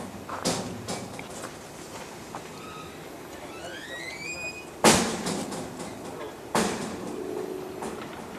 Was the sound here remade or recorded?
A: recorded